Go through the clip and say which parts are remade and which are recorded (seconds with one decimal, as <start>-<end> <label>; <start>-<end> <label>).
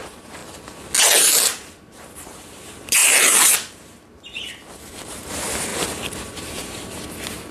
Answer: 0.0-0.4 remade; 0.4-1.2 recorded; 1.2-7.5 remade